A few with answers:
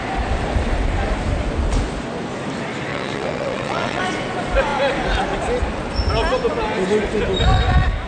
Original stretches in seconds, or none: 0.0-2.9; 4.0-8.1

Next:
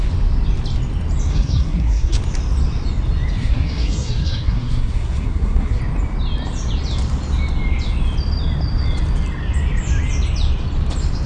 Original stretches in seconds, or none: 0.0-1.3; 2.2-3.4; 5.8-11.3

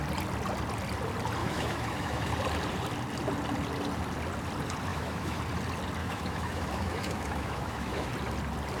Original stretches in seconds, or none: 0.0-1.4; 2.3-4.9; 5.4-6.0; 8.1-8.8

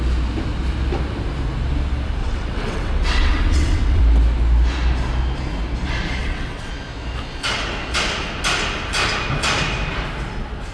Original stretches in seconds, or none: 0.0-2.2; 4.0-6.2; 6.7-10.7